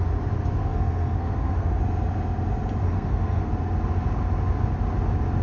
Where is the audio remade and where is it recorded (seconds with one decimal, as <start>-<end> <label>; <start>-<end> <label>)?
0.0-0.6 recorded; 0.6-1.8 remade; 1.8-2.8 recorded; 2.8-3.5 remade; 3.5-5.4 recorded